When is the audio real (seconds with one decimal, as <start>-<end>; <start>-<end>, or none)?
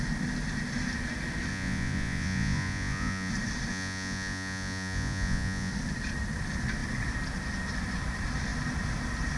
0.0-1.5; 3.3-3.7; 5.7-9.4